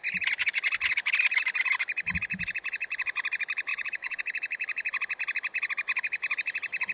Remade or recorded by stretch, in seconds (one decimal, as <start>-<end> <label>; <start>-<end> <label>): 0.0-3.7 recorded; 3.7-4.2 remade; 4.2-6.9 recorded

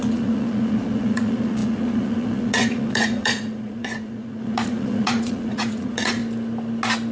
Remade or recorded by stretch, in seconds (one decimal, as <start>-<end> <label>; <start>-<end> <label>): 0.0-6.2 remade; 6.2-7.1 recorded

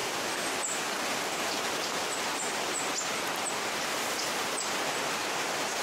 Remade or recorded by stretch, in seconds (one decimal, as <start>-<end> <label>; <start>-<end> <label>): 0.0-5.8 recorded